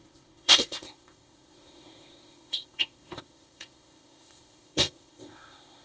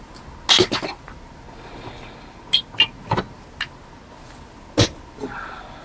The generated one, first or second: first